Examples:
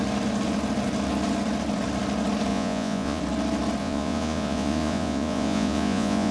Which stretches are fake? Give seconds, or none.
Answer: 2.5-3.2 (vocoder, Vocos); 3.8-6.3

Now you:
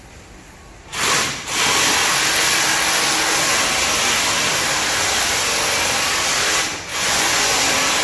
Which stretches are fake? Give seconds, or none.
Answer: 6.9-7.6 (vocoder, Vocos)